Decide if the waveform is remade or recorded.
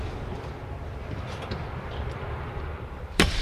remade